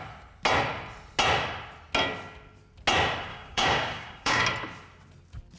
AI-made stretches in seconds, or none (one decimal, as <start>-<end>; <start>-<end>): 3.3-4.4